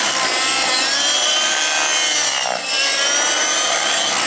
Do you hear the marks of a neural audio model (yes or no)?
no